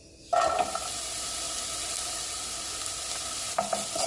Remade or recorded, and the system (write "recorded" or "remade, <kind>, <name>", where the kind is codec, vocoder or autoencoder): recorded